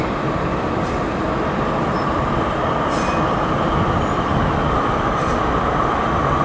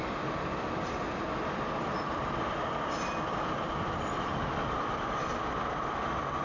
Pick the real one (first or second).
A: second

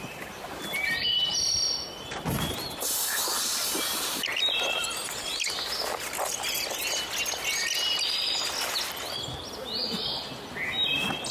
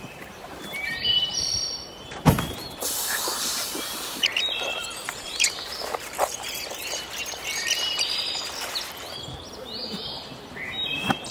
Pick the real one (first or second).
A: first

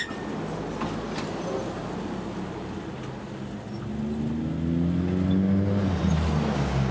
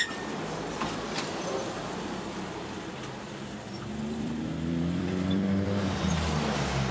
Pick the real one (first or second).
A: first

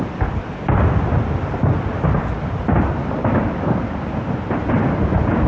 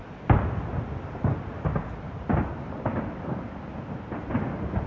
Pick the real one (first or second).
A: second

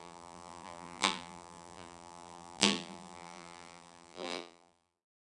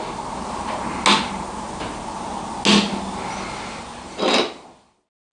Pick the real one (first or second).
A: second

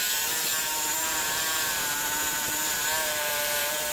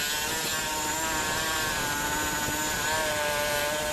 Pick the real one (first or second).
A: second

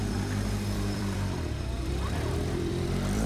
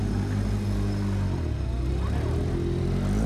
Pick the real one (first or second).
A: second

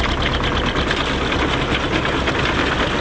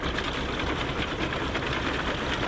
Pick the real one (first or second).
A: first